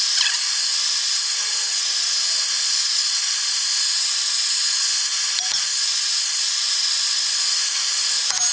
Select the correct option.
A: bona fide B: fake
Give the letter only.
A